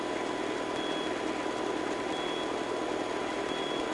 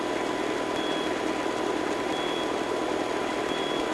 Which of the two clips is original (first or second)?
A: first